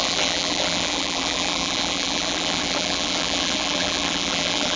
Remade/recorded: remade